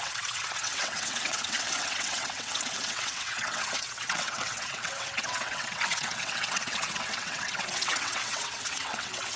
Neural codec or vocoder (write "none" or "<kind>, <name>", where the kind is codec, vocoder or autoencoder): vocoder, WaveNeXt